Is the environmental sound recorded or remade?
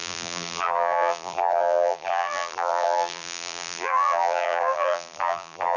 remade